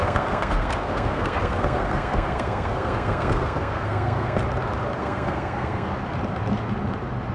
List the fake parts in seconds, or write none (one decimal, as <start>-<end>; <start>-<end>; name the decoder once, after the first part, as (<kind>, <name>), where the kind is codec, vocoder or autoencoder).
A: 0.0-4.4 (codec, SNAC); 5.0-5.9